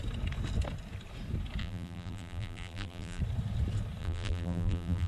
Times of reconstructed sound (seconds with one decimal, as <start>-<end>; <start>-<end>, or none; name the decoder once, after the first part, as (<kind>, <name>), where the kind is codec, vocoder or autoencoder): 1.6-3.2 (vocoder, BigVGAN v2); 4.0-5.1